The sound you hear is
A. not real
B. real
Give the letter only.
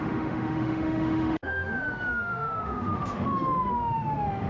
A